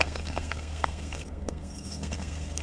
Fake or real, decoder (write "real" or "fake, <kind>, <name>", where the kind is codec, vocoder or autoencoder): fake, codec, SNAC